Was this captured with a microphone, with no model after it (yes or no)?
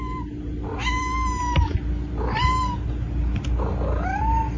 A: yes